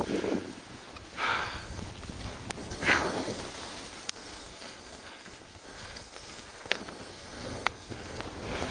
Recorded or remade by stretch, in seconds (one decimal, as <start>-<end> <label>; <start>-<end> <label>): 0.0-1.3 recorded; 1.3-1.9 remade; 1.9-2.6 recorded; 2.6-3.4 remade; 3.4-4.0 recorded; 4.0-8.2 remade; 8.2-8.7 recorded